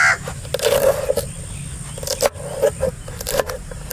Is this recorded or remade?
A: recorded